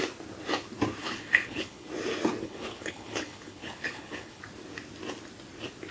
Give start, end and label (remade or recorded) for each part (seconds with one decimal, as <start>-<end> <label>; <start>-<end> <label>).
0.0-1.0 recorded; 1.0-1.9 remade; 1.9-2.4 recorded; 2.4-4.4 remade; 4.4-5.9 recorded